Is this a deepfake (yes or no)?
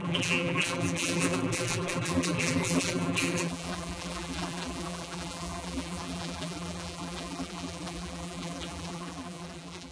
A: yes